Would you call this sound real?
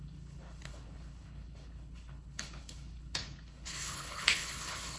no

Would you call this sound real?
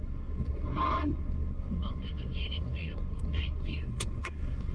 no